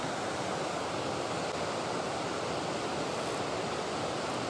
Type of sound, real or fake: real